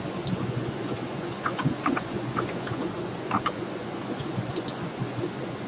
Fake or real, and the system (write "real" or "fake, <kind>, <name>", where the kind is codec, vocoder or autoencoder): fake, vocoder, Vocos